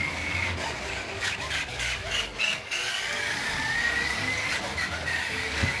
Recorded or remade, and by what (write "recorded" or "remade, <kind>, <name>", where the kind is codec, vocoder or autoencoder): remade, codec, DAC